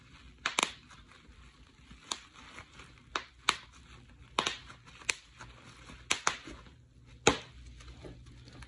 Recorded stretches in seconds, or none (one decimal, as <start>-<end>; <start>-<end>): 0.0-0.6; 2.4-8.7